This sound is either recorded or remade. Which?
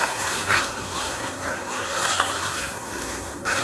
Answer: remade